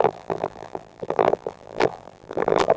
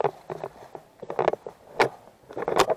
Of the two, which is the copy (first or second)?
first